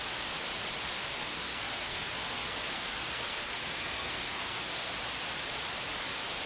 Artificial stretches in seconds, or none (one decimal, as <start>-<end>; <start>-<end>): 1.0-4.9